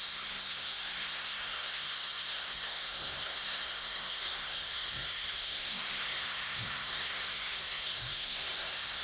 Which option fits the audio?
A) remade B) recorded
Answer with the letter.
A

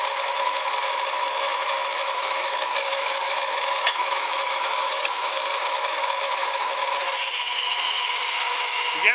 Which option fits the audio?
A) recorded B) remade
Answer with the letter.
B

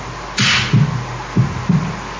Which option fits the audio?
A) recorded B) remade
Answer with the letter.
A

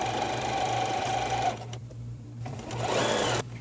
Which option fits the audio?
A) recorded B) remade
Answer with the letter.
B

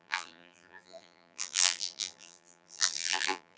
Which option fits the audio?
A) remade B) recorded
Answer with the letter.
A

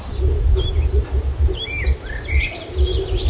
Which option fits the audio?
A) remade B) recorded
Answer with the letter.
A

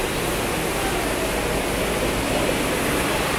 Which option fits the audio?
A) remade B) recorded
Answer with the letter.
B